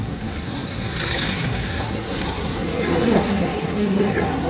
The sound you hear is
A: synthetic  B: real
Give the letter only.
A